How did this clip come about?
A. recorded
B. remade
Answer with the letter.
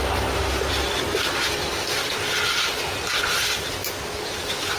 A